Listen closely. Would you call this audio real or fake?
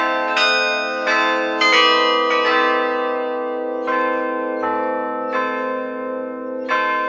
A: real